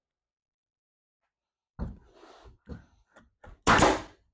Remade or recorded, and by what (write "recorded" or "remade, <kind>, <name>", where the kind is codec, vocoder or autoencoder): recorded